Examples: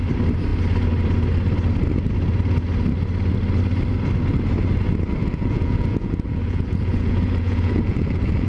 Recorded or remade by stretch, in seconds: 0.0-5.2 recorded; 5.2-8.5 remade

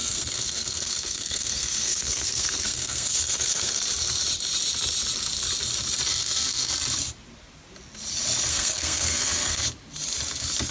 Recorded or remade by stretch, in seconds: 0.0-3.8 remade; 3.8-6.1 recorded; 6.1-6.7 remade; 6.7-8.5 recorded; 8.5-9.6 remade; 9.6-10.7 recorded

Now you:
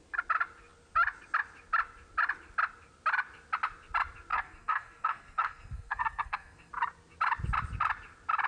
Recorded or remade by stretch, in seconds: 0.0-4.3 recorded; 4.3-6.7 remade; 6.7-8.5 recorded

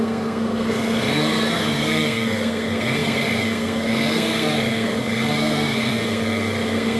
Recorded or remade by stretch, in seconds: 0.0-7.0 remade